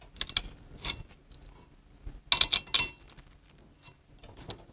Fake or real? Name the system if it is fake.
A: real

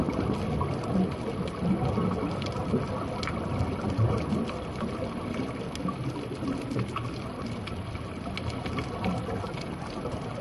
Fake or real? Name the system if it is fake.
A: real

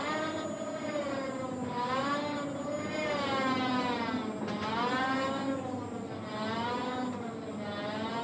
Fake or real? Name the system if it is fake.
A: real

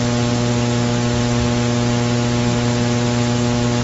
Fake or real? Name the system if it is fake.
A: real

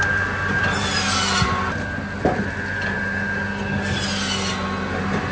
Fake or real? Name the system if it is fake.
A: real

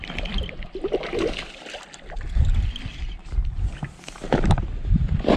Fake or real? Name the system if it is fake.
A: real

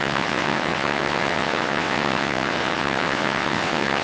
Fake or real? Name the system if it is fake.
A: fake, vocoder, WaveNeXt